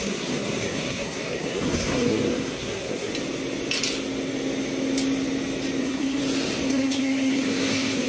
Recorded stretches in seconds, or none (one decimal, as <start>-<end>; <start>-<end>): 3.1-5.8; 6.2-6.7

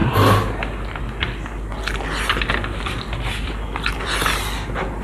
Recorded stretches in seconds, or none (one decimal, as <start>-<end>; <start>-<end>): 0.0-5.0

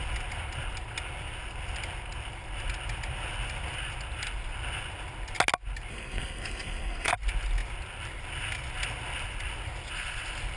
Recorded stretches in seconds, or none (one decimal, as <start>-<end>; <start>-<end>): 0.0-5.9; 7.1-10.6

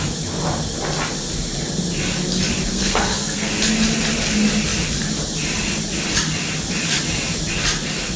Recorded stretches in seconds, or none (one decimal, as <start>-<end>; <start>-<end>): 0.0-2.7; 3.5-8.2

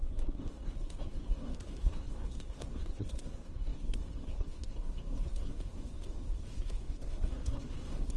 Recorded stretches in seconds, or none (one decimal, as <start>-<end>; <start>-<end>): none